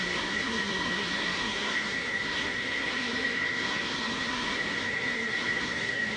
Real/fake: fake